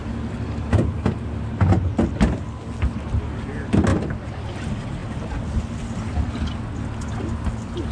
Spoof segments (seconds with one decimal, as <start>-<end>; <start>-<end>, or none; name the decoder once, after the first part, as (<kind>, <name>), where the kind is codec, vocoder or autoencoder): none